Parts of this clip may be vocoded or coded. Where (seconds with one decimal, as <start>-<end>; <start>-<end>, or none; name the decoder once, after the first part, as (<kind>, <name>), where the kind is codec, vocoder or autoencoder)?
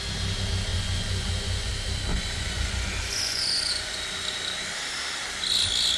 0.7-1.7 (vocoder, Vocos); 2.1-4.0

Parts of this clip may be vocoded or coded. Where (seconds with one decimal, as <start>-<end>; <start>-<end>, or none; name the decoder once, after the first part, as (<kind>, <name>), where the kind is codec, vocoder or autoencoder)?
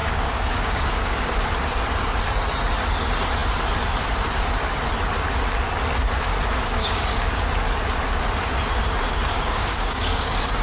0.0-1.2 (codec, DAC); 6.8-7.4; 9.3-10.6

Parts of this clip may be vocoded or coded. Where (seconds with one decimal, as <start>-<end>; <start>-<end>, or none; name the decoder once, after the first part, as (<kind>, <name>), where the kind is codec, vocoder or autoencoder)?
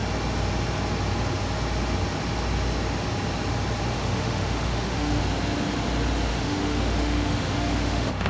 3.9-5.2 (autoencoder, DAC-VAE); 6.3-8.3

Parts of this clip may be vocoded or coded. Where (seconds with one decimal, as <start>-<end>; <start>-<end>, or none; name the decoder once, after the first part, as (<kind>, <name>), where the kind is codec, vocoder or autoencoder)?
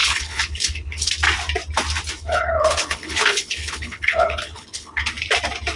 0.0-1.1 (codec, HILCodec); 2.2-5.0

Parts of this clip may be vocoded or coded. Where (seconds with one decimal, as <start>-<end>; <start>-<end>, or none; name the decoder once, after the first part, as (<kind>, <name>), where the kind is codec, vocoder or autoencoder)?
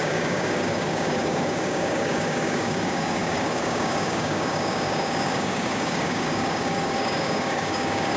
0.0-8.2 (codec, DAC)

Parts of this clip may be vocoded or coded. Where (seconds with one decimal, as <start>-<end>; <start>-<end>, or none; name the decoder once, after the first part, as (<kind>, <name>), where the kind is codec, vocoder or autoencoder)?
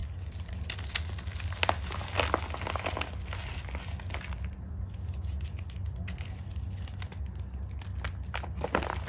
none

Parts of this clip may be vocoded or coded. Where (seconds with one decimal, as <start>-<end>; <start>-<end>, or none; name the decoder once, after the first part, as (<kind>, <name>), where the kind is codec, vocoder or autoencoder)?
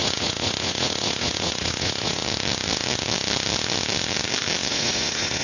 0.0-2.2 (vocoder, Vocos); 4.7-5.4